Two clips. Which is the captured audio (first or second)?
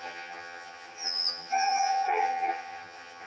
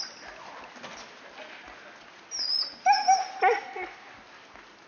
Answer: second